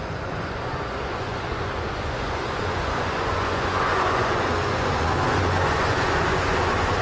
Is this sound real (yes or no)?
no